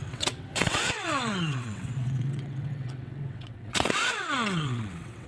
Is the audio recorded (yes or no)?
no